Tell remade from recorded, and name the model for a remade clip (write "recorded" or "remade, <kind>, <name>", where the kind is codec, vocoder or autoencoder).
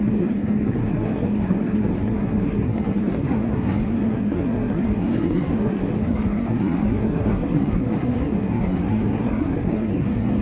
remade, codec, SNAC